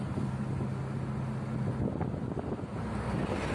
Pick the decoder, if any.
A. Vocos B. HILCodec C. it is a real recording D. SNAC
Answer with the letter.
C